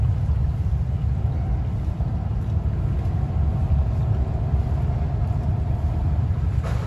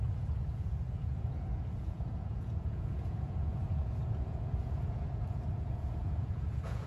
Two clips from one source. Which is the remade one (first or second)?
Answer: second